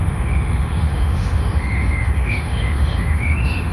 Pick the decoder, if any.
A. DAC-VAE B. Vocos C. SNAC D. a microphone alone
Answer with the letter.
A